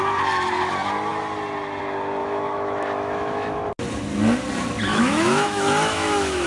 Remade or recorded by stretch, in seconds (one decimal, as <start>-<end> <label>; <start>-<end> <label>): 0.0-2.2 recorded; 2.2-3.7 remade; 3.7-4.9 recorded; 4.9-6.5 remade